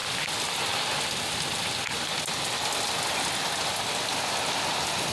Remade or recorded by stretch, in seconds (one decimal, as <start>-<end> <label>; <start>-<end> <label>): 0.0-5.1 recorded